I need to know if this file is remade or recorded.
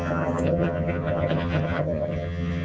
remade